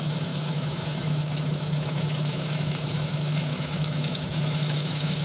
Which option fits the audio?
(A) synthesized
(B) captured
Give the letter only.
A